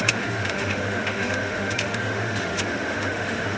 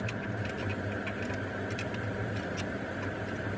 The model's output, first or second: first